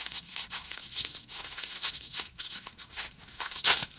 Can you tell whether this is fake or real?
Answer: fake